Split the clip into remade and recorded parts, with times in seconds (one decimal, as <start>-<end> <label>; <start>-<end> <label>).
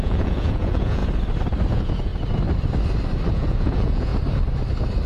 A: 0.0-1.0 remade; 1.0-1.7 recorded; 1.7-2.1 remade; 2.1-3.3 recorded; 3.3-4.1 remade; 4.1-5.1 recorded